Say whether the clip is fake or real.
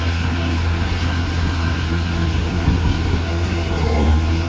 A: fake